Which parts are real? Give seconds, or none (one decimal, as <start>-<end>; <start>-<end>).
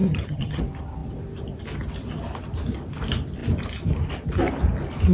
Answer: 0.6-5.1